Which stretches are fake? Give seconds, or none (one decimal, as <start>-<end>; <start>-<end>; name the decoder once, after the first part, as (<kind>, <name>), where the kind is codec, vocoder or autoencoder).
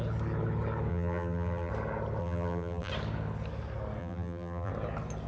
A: 0.9-1.7 (vocoder, BigVGAN v2); 2.2-2.9; 4.0-4.7